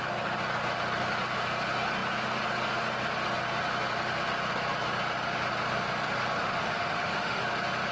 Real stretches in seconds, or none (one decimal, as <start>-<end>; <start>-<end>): 0.0-6.4; 7.4-7.9

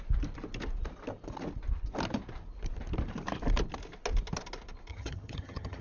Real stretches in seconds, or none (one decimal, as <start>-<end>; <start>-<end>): 0.0-4.9

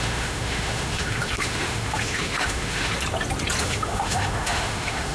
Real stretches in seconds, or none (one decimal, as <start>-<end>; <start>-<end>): 2.9-3.6

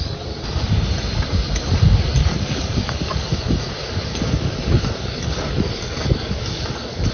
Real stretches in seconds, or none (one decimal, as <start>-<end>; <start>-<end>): 0.0-2.2; 3.5-4.1

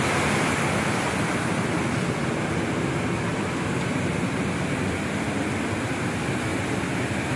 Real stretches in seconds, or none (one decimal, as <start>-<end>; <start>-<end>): 0.0-7.4

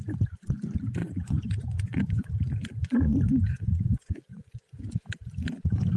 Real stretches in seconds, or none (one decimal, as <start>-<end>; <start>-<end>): 0.0-1.0; 2.3-2.8; 4.7-6.0

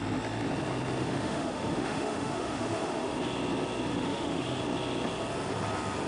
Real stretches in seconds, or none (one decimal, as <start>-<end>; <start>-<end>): 0.0-1.0; 3.2-3.9; 4.6-6.1